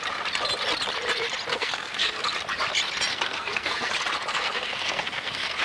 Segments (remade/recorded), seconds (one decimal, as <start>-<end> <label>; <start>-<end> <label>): 0.0-1.5 recorded; 1.5-2.2 remade; 2.2-3.1 recorded; 3.1-3.9 remade; 3.9-4.3 recorded; 4.3-5.6 remade